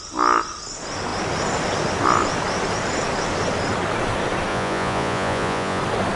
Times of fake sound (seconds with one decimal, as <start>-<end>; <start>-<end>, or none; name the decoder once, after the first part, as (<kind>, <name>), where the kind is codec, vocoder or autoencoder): 4.5-5.8 (vocoder, Vocos)